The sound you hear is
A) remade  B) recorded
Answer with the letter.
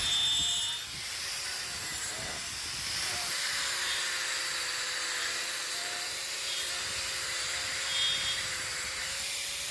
A